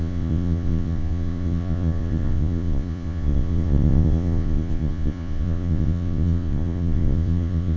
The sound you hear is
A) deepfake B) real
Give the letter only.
A